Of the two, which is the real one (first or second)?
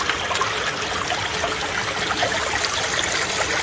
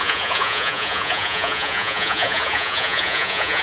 first